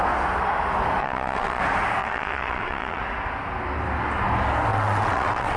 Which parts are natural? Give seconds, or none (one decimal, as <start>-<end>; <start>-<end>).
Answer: 0.0-1.0; 1.6-2.0; 3.0-4.7